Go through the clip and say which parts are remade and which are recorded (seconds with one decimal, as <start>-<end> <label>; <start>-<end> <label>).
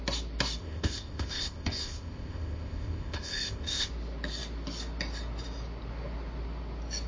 0.0-0.6 recorded; 0.6-3.9 remade; 3.9-7.1 recorded